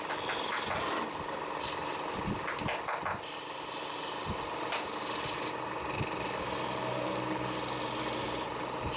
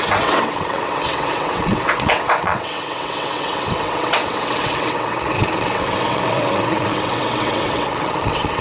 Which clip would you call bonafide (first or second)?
first